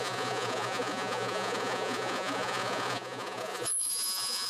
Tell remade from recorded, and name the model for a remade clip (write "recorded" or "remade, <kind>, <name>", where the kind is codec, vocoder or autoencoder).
remade, vocoder, Vocos